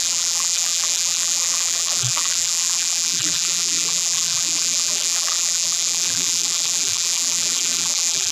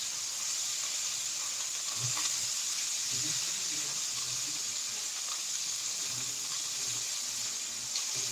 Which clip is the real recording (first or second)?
second